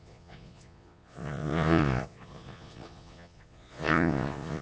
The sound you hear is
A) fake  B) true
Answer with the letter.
A